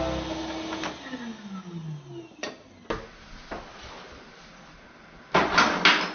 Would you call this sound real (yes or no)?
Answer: yes